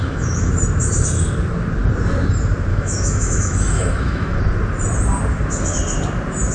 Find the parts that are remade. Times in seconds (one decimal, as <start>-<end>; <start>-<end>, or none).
0.0-0.5; 2.7-4.4